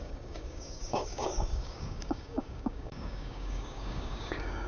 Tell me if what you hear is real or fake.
fake